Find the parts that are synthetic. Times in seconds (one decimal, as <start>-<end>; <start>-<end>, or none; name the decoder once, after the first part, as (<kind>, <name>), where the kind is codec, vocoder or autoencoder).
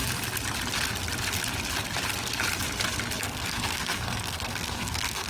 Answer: 3.2-5.3 (codec, SNAC)